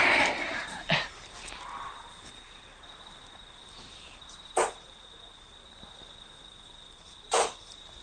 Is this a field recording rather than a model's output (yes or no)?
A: no